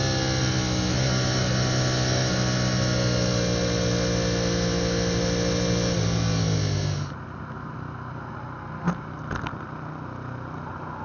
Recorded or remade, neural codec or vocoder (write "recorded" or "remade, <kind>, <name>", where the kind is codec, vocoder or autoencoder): recorded